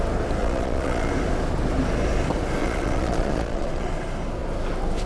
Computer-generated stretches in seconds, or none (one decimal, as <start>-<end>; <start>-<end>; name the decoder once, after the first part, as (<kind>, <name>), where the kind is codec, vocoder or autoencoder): 0.4-1.1 (vocoder, Vocos); 2.6-3.9